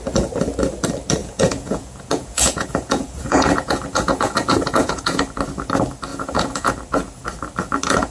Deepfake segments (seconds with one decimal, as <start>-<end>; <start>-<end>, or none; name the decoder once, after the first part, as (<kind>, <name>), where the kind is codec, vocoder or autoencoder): 1.2-5.2 (vocoder, Vocos); 6.1-6.7